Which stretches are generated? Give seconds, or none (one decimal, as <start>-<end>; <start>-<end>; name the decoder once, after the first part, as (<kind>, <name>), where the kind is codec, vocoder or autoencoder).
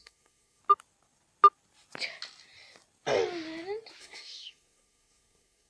0.0-0.6 (codec, SNAC); 4.0-5.7